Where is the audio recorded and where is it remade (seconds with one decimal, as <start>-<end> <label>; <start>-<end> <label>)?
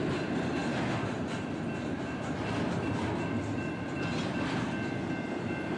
0.0-5.8 recorded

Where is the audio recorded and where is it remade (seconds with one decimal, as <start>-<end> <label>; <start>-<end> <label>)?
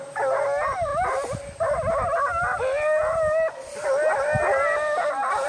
0.0-5.5 recorded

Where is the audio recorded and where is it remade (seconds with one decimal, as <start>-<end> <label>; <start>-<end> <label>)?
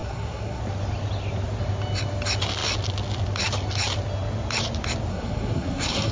0.0-0.6 remade; 0.6-5.1 recorded; 5.1-6.1 remade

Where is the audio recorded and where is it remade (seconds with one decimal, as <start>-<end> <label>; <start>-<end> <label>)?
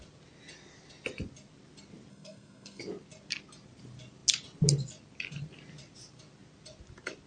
0.0-2.1 recorded; 2.1-2.8 remade; 2.8-7.3 recorded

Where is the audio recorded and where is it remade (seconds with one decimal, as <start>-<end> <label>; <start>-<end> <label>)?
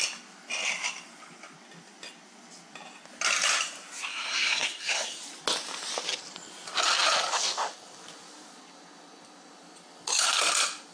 0.0-4.1 recorded; 4.1-5.2 remade; 5.2-10.9 recorded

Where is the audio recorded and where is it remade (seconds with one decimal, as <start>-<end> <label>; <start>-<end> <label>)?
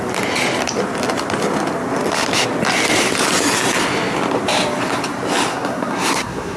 0.0-5.5 recorded; 5.5-6.6 remade